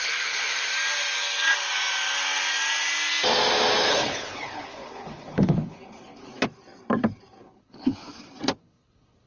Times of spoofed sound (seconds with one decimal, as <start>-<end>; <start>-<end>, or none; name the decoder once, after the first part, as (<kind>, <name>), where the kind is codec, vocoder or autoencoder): 0.0-0.7 (codec, HILCodec); 3.9-6.3; 7.4-8.1; 8.6-9.3